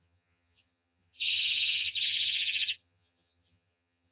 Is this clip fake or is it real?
fake